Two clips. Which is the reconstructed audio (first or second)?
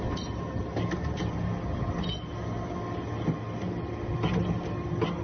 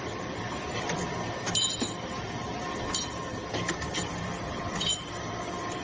second